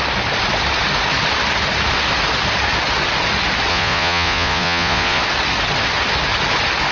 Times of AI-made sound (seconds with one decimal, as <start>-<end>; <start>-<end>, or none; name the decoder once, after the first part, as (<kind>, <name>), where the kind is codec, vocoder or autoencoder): 3.7-5.2 (vocoder, Vocos)